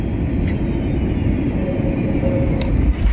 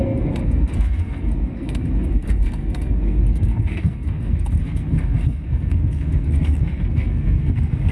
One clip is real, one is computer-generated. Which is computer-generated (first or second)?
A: second